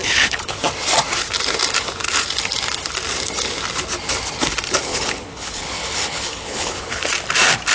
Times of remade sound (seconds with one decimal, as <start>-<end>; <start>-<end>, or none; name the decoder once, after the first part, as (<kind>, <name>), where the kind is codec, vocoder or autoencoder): 0.0-0.6 (codec, HILCodec); 4.9-7.1